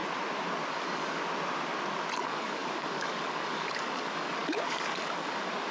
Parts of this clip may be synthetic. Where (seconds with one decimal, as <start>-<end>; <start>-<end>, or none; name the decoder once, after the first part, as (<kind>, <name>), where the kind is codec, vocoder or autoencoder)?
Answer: 0.7-1.2 (codec, DAC); 2.2-5.7